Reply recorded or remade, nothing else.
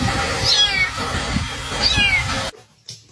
recorded